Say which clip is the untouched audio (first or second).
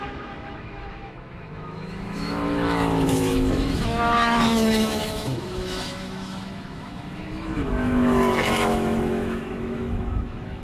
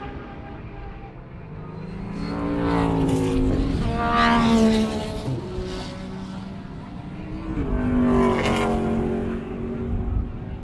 second